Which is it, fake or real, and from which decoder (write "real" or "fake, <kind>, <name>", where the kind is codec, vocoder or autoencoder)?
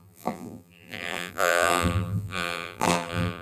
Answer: fake, vocoder, BigVGAN v2